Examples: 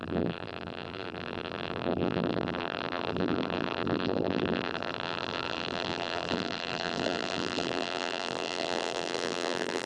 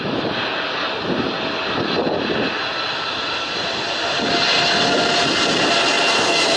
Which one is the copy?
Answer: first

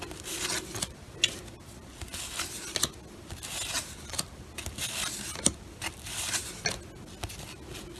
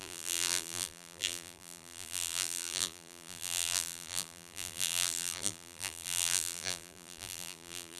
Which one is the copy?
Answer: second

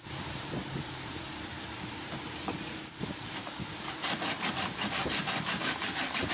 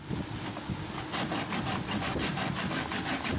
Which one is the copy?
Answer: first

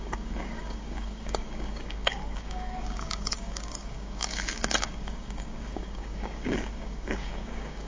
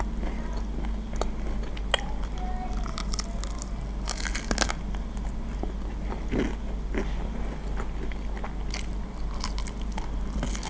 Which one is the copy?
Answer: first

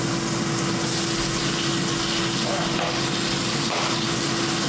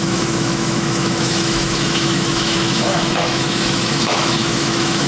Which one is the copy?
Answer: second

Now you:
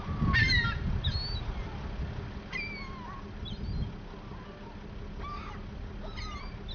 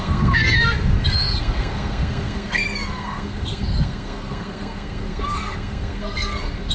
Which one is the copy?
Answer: second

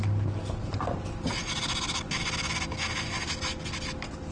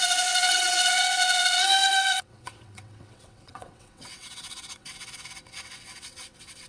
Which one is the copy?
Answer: second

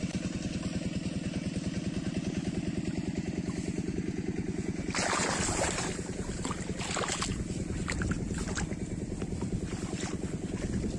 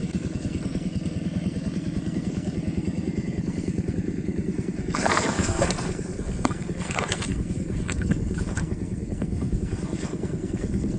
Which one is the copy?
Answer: second